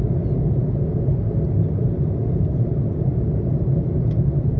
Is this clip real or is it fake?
real